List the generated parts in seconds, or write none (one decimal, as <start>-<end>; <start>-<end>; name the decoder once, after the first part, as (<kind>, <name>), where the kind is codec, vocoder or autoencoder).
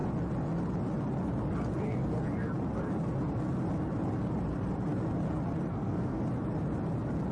5.7-6.2 (codec, SNAC)